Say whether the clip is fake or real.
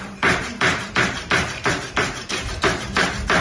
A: fake